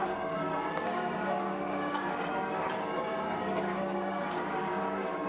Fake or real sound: fake